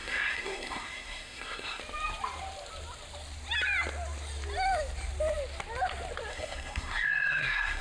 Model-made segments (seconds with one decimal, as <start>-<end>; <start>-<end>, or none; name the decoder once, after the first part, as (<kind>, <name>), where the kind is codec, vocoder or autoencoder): 0.0-1.8 (codec, SNAC); 6.3-7.8